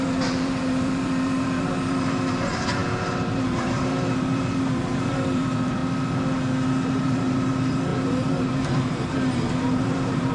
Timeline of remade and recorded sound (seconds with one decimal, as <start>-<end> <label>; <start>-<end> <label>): 0.0-5.8 remade; 5.8-6.9 recorded; 6.9-10.3 remade